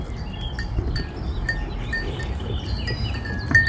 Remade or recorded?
recorded